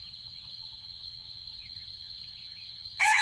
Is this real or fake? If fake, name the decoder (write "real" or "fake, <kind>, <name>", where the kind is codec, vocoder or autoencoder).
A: fake, vocoder, WaveNeXt